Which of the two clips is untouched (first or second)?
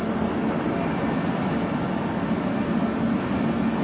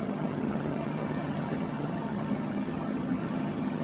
first